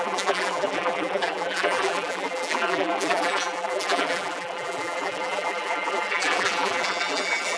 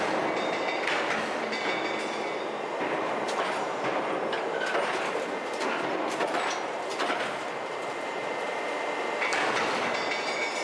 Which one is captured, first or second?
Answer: second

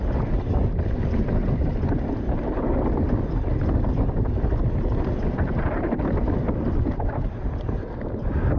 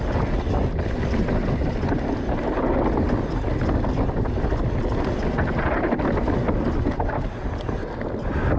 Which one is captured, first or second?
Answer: second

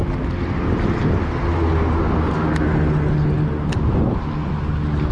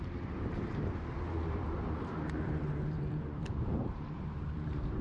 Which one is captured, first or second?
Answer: first